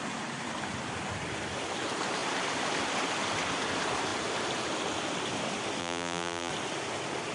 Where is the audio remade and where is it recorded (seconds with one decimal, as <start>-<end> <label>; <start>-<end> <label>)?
0.0-5.8 recorded; 5.8-6.5 remade; 6.5-7.3 recorded